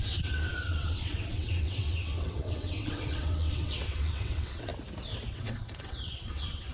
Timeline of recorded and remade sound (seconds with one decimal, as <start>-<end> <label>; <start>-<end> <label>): 0.0-4.7 remade; 4.7-5.3 recorded; 5.3-6.7 remade